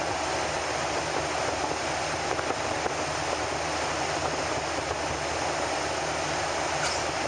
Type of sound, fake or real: real